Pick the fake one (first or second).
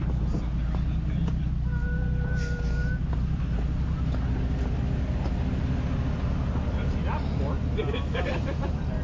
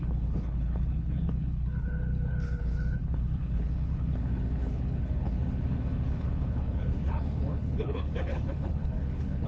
second